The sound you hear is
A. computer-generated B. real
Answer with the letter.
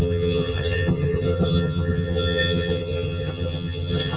A